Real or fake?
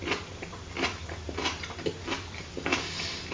real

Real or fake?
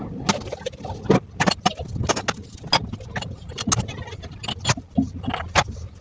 real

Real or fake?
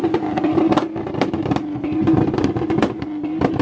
real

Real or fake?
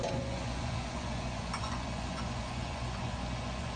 fake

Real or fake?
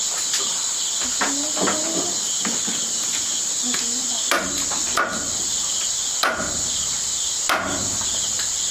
real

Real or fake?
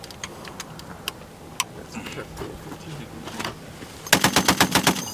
real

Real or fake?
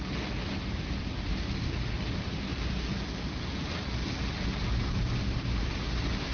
real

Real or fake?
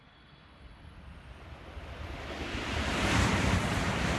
real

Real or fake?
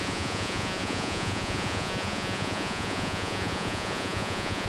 fake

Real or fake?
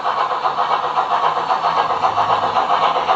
real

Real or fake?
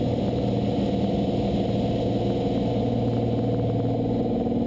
real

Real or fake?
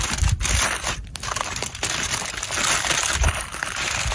real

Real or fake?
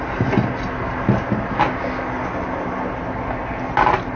real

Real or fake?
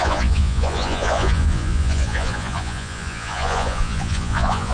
fake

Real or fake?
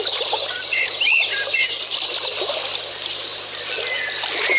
real